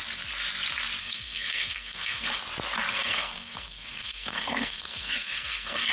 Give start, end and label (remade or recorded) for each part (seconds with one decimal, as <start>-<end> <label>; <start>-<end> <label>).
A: 0.0-1.0 recorded; 1.0-2.4 remade; 2.4-2.9 recorded; 2.9-5.9 remade